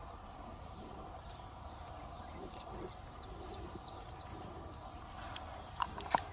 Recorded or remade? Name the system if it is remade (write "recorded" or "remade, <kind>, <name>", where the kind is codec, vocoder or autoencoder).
remade, vocoder, BigVGAN v2